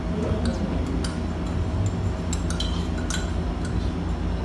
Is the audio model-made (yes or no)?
no